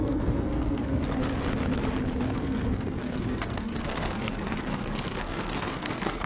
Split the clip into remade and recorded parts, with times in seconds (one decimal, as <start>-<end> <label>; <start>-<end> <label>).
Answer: 0.0-1.2 remade; 1.2-2.4 recorded; 2.4-6.3 remade